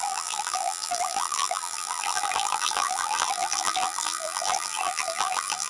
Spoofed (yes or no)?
yes